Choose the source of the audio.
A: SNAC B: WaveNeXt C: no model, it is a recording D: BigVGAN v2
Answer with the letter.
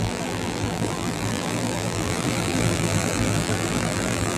D